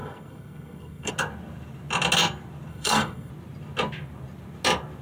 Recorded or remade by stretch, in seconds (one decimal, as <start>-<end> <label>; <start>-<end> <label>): 0.0-1.1 remade; 1.1-2.7 recorded; 2.7-3.3 remade; 3.3-5.0 recorded